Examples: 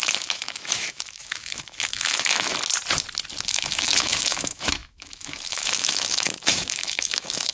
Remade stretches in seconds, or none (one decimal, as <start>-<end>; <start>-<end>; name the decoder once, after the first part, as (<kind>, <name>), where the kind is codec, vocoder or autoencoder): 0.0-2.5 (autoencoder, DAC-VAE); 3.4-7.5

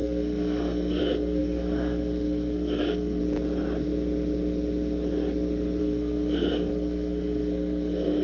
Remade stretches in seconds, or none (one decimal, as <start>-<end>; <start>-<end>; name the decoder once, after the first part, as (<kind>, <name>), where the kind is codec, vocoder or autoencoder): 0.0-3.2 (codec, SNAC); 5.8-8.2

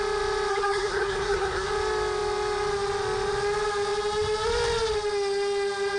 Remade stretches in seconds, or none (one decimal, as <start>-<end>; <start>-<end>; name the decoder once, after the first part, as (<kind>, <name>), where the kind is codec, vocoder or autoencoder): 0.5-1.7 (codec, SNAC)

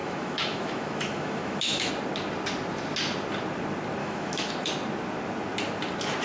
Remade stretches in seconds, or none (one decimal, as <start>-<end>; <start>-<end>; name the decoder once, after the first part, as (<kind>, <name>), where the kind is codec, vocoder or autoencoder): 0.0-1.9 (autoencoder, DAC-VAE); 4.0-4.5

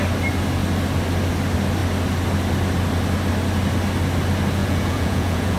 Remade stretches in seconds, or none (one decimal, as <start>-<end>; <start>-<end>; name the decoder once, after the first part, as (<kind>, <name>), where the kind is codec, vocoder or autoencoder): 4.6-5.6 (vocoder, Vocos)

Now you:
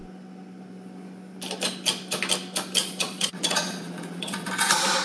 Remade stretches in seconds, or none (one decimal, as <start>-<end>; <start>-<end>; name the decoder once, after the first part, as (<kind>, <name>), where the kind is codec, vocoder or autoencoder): 2.8-4.5 (vocoder, Vocos)

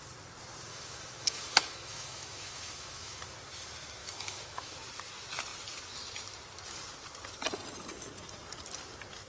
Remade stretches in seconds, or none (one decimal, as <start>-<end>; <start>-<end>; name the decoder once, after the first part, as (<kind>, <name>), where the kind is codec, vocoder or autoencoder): 0.7-3.2 (autoencoder, DAC-VAE); 4.0-4.7

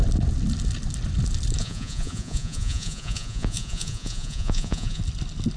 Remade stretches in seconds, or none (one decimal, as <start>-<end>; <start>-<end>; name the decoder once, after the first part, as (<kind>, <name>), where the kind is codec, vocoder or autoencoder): 1.6-5.0 (vocoder, Vocos)